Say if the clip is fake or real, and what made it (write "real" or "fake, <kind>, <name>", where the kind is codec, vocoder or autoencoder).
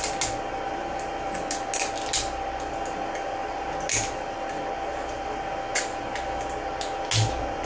real